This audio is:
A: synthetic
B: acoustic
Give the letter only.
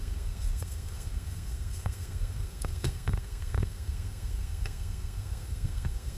A